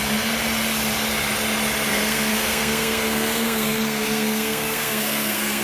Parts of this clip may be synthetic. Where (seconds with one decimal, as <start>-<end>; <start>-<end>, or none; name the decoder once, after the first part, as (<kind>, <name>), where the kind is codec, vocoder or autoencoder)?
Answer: 1.9-5.6 (codec, SNAC)

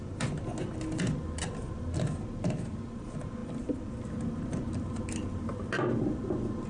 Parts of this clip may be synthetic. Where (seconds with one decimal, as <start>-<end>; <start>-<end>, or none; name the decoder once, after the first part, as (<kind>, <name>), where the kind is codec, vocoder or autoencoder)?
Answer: none

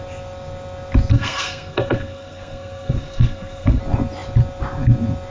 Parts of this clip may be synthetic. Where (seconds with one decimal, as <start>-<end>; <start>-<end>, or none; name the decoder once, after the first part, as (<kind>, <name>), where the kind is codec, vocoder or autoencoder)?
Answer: 1.1-3.8 (codec, SNAC)

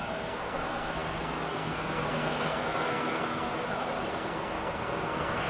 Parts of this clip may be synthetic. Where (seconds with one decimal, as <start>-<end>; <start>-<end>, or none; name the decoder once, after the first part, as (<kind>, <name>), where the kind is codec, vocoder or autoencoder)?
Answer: 0.0-3.5 (codec, SNAC); 4.1-5.5